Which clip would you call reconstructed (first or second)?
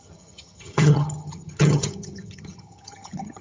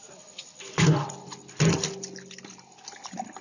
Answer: first